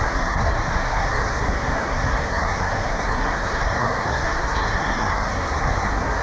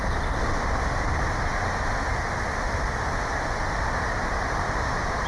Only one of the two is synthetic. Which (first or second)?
first